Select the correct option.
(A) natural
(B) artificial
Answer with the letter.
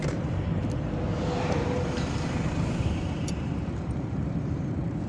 B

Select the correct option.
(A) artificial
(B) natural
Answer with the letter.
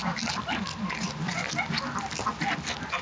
B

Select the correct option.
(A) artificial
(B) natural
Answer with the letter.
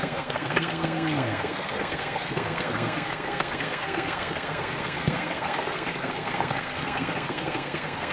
A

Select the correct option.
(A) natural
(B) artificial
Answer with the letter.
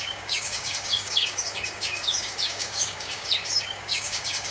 B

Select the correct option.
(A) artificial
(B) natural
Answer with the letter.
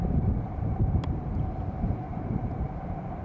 A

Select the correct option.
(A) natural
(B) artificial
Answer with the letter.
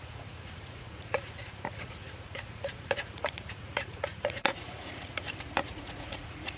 B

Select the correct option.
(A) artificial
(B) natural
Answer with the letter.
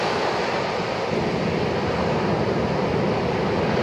B